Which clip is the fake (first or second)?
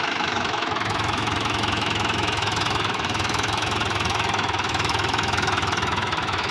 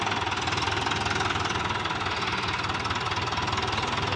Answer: first